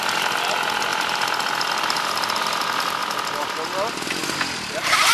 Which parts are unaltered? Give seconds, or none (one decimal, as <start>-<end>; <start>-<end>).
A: 0.0-0.9; 2.6-4.2